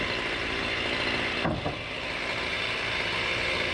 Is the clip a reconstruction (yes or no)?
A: no